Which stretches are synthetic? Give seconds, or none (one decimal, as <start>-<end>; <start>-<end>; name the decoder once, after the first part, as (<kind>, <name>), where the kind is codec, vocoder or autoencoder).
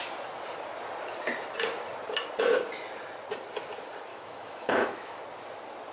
4.1-5.2 (autoencoder, DAC-VAE)